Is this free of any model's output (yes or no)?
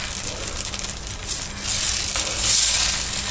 yes